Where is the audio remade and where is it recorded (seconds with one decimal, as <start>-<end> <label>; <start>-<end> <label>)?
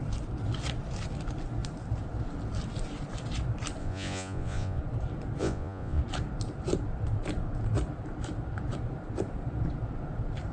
0.0-3.8 recorded; 3.8-4.8 remade; 4.8-5.4 recorded; 5.4-6.0 remade; 6.0-10.5 recorded